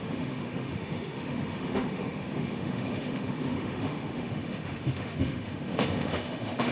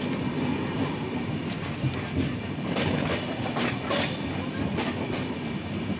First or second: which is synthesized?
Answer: first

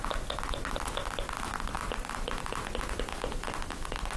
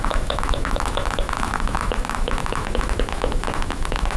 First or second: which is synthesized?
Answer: second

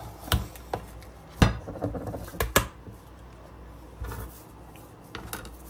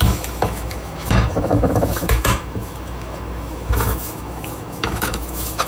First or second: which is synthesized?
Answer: second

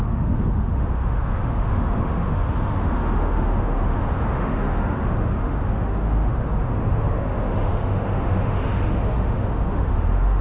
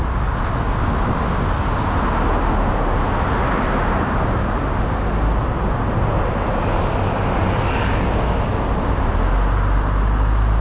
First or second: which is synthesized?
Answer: first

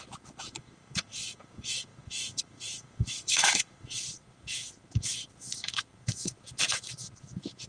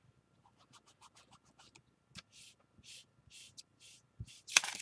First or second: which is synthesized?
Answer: first